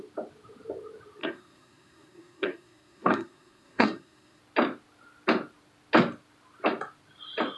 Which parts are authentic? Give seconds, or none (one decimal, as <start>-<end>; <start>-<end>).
0.0-1.2; 4.4-7.6